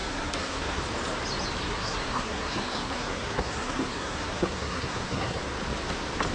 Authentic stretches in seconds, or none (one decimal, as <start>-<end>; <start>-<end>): 0.8-1.6; 5.4-6.3